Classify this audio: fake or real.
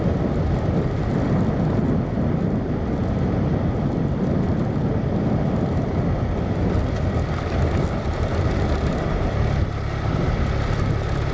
real